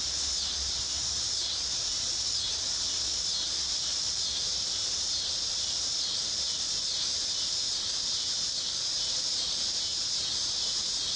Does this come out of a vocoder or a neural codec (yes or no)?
yes